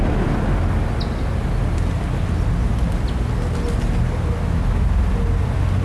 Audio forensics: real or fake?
real